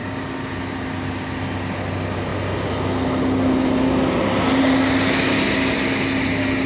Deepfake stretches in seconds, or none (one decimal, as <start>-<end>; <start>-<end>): none